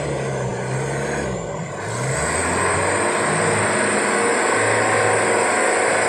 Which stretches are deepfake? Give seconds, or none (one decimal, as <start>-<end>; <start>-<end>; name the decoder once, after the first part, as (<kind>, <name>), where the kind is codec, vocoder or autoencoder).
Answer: none